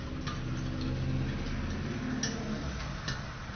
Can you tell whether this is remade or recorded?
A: recorded